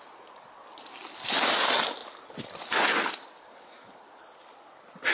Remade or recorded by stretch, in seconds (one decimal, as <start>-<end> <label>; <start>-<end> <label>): 0.0-5.1 recorded